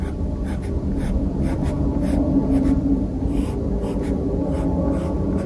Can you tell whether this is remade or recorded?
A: recorded